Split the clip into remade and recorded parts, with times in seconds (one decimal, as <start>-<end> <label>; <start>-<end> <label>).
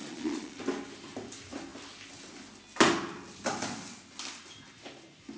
0.0-0.6 remade; 0.6-5.4 recorded